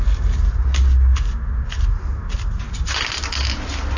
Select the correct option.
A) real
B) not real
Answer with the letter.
A